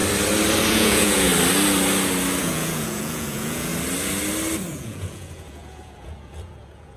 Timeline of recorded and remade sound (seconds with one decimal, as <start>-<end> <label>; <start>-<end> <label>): 0.0-0.7 recorded; 0.7-1.3 remade; 1.3-2.4 recorded; 2.4-3.7 remade; 3.7-4.7 recorded; 4.7-7.0 remade